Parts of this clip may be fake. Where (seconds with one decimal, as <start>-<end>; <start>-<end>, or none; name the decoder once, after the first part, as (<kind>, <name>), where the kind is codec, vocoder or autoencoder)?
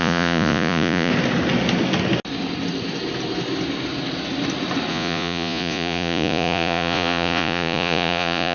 0.0-1.1 (vocoder, Vocos); 4.9-8.5